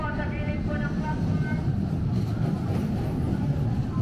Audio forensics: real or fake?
real